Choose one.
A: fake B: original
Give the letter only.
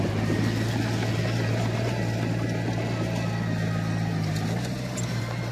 B